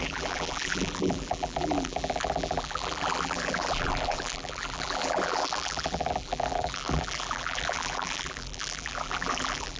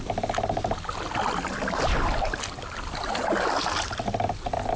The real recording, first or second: second